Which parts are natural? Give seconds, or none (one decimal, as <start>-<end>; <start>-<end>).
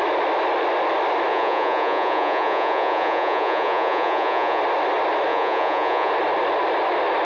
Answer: 0.0-1.3; 4.6-5.3; 6.1-7.2